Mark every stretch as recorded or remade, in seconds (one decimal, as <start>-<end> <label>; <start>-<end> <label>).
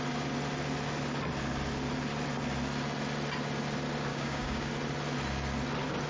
0.0-4.1 recorded; 4.1-4.7 remade; 4.7-6.1 recorded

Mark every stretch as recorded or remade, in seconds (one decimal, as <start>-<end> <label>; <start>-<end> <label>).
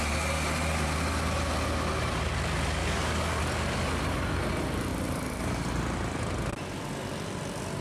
0.0-2.8 recorded; 2.8-3.4 remade; 3.4-7.8 recorded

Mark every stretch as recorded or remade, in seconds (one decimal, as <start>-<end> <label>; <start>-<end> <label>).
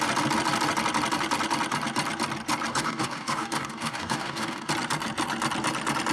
0.0-2.7 recorded; 2.7-4.7 remade; 4.7-6.1 recorded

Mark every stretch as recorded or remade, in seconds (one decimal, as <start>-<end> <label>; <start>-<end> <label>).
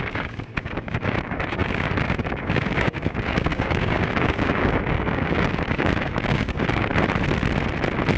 0.0-6.9 remade; 6.9-8.2 recorded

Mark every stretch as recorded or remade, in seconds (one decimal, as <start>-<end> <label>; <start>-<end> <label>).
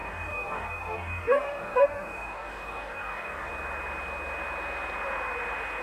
0.0-3.5 remade; 3.5-5.8 recorded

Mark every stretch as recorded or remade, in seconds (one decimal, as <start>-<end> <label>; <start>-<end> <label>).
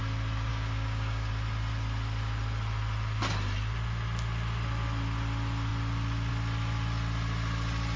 0.0-0.5 recorded; 0.5-1.3 remade; 1.3-8.0 recorded